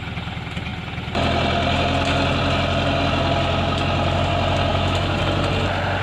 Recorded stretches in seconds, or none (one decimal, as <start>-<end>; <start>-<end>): 0.0-4.7; 5.2-6.0